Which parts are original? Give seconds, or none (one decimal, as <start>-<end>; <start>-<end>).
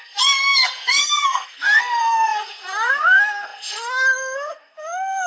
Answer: none